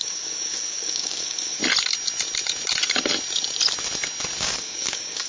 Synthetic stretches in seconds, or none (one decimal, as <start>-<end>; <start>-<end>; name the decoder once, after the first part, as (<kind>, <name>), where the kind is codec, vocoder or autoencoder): 0.0-1.6 (codec, DAC); 4.4-5.3